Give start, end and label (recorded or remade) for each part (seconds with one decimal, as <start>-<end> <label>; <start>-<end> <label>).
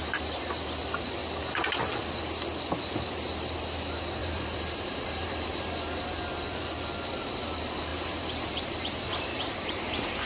0.0-4.2 recorded; 4.2-5.7 remade; 5.7-7.9 recorded; 7.9-9.7 remade; 9.7-10.3 recorded